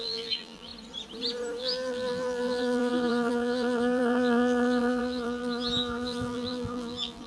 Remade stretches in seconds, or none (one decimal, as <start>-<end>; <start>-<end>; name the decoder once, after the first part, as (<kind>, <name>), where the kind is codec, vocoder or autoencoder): 0.0-0.7 (vocoder, BigVGAN v2); 1.6-7.3